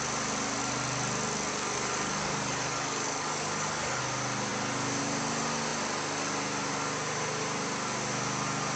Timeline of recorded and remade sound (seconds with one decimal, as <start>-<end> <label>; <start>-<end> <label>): 0.0-1.5 recorded; 1.5-4.0 remade; 4.0-8.8 recorded